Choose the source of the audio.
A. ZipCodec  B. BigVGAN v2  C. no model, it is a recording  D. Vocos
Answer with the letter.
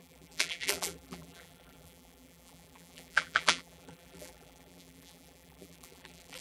B